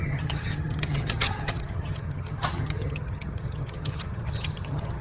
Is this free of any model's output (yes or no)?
no